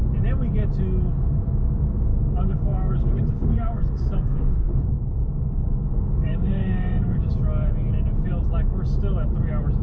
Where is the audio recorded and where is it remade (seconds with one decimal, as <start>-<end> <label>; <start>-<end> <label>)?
0.0-2.1 recorded; 2.1-7.3 remade; 7.3-9.8 recorded